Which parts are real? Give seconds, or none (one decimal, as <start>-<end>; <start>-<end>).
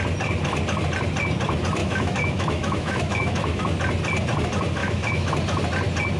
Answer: 0.0-1.8; 3.6-4.8; 5.3-6.2